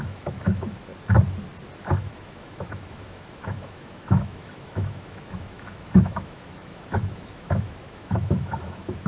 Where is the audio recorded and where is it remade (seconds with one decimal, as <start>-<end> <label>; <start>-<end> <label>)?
0.0-0.9 remade; 0.9-1.8 recorded; 1.8-9.1 remade